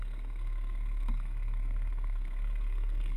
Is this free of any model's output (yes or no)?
no